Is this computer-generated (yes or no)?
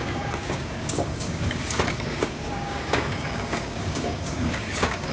yes